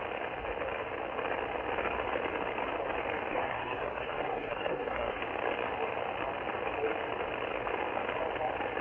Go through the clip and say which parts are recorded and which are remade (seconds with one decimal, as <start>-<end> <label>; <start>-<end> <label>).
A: 0.0-3.3 recorded; 3.3-5.2 remade; 5.2-8.8 recorded